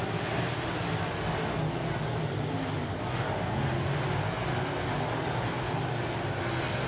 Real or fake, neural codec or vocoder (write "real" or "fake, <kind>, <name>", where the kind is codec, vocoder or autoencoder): real